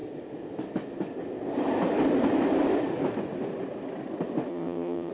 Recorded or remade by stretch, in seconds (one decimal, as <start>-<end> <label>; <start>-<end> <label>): 0.0-4.5 recorded; 4.5-5.1 remade